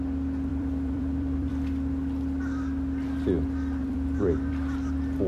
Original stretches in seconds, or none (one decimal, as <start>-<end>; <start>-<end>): 0.0-0.5; 1.5-3.8; 4.5-5.3